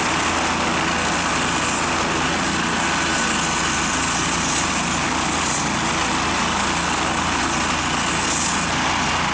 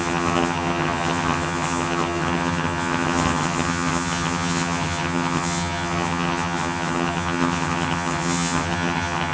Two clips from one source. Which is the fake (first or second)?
second